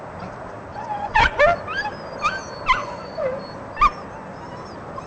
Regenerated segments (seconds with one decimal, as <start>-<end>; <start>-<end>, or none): 0.7-1.4; 2.8-3.4